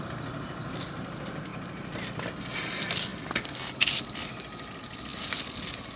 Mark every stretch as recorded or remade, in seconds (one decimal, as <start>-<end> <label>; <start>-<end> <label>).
0.0-3.1 recorded; 3.1-4.3 remade; 4.3-5.1 recorded; 5.1-6.0 remade